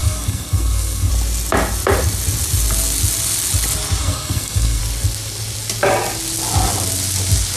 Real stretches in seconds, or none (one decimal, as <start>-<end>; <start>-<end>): 1.1-4.0; 4.8-7.6